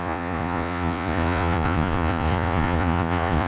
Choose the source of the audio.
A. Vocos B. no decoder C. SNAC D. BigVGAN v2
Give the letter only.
A